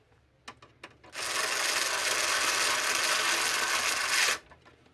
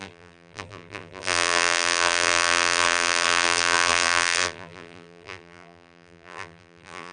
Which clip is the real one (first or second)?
first